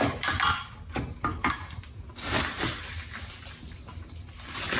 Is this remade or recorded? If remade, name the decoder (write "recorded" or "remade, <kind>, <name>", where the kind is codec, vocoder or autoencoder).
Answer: recorded